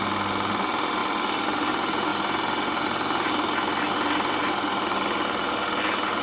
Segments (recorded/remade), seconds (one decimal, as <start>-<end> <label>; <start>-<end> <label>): 0.0-6.2 recorded